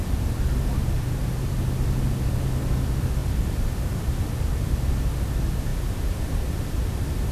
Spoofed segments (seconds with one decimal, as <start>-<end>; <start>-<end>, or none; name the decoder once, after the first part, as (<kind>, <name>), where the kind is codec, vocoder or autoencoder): 0.8-1.6 (vocoder, BigVGAN v2); 3.2-4.7